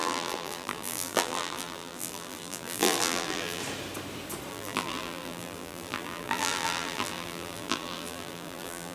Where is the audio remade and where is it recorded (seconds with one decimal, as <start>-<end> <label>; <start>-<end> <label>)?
0.0-3.6 remade; 3.6-4.5 recorded; 4.5-8.9 remade